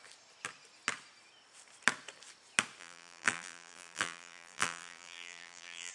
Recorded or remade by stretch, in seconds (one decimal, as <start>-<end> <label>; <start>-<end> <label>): 0.0-2.8 recorded; 2.8-5.9 remade